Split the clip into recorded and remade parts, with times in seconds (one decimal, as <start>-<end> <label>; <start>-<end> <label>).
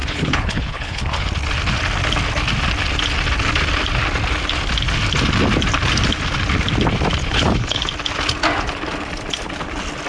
0.0-1.0 remade; 1.0-7.2 recorded; 7.2-7.8 remade; 7.8-10.1 recorded